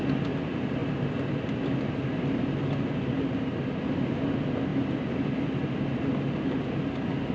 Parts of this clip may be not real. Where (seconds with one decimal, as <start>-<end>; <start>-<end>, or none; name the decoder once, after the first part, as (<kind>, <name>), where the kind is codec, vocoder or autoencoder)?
none